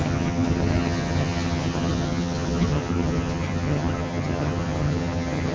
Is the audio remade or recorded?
remade